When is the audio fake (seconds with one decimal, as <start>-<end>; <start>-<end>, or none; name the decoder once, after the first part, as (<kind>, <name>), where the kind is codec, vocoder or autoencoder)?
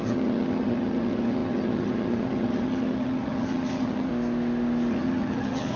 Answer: 0.0-4.1 (vocoder, HiFi-GAN); 4.9-5.8